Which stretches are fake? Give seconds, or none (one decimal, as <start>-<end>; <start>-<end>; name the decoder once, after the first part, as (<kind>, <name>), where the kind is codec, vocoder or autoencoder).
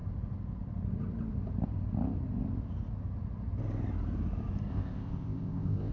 4.7-5.9 (codec, ZipCodec)